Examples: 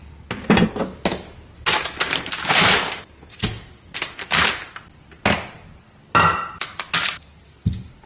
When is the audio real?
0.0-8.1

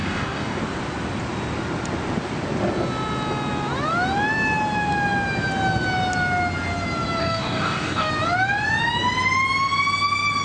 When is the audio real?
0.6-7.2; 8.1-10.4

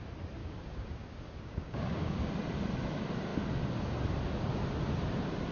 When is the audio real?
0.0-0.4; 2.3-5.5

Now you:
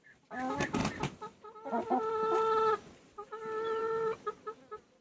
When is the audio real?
0.0-5.0

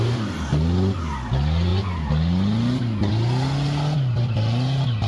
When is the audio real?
0.0-5.1